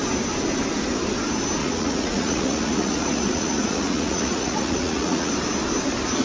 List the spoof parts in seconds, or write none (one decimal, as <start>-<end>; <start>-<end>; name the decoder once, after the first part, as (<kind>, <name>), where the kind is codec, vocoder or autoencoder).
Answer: 1.6-5.3 (vocoder, Vocos)

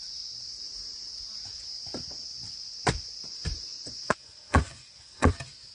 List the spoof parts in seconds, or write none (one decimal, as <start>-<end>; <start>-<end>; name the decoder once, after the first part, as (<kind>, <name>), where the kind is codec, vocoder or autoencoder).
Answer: 3.7-5.3 (vocoder, Vocos)

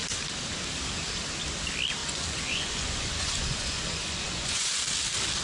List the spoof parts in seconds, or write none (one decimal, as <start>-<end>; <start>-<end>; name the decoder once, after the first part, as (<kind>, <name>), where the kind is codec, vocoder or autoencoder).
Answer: 2.0-4.8 (vocoder, Vocos)

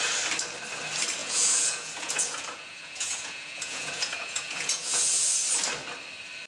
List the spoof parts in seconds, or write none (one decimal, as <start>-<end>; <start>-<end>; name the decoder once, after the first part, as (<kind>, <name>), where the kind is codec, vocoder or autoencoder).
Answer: 1.2-5.1 (vocoder, Vocos)

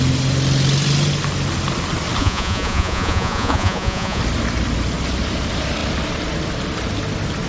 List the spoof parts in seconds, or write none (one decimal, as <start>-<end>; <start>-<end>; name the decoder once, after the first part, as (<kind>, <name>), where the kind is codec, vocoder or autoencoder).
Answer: 2.2-4.2 (vocoder, Vocos)

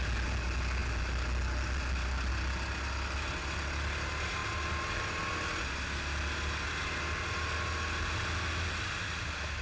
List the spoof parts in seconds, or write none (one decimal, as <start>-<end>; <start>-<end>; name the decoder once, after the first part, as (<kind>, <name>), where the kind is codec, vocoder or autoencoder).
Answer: none

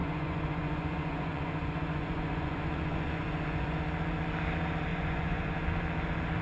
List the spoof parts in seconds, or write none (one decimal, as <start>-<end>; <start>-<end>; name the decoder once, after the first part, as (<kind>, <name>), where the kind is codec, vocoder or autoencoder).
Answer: 0.0-3.8 (vocoder, Vocos); 4.9-5.5

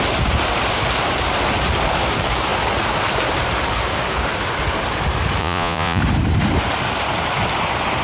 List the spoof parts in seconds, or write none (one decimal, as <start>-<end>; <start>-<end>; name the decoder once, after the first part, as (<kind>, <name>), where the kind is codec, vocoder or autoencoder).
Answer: 5.4-6.0 (vocoder, Vocos)